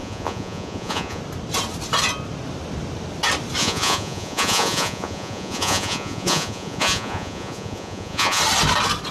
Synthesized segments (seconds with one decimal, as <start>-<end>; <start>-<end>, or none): 0.0-1.2; 3.6-8.4